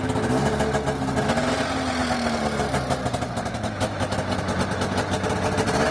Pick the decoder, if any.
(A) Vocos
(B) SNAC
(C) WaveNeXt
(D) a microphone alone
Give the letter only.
D